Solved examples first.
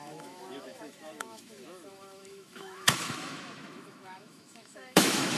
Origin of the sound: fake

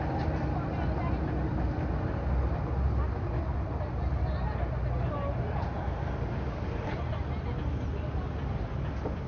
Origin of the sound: real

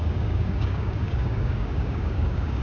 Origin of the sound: fake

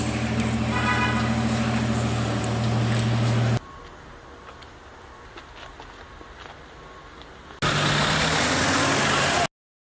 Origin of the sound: real